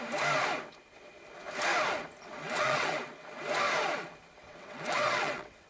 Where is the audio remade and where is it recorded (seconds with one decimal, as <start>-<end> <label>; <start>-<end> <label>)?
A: 0.0-2.3 recorded; 2.3-3.0 remade; 3.0-4.4 recorded; 4.4-5.7 remade